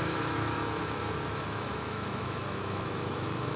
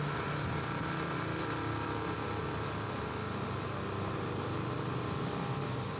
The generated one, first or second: first